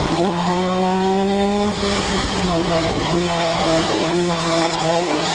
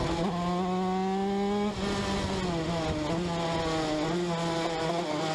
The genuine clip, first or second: second